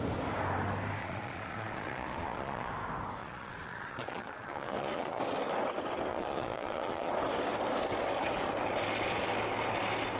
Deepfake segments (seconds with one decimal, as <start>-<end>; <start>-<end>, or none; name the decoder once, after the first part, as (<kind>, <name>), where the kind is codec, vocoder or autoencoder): 1.0-2.7 (vocoder, Vocos); 3.2-5.2; 6.1-7.1